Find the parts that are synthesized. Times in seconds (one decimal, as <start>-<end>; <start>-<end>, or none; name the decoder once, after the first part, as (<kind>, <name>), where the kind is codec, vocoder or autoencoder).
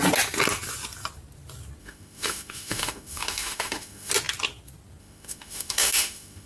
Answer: 1.8-4.1 (autoencoder, DAC-VAE); 5.0-6.5